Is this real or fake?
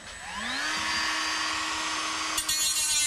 real